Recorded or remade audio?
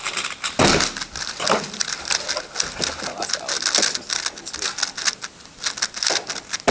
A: recorded